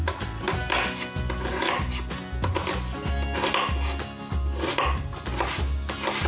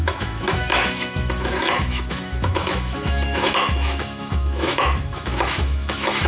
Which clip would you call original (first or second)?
first